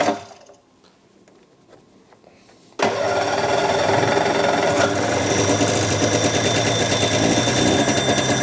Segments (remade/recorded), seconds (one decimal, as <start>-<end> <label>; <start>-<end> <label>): 0.0-8.4 recorded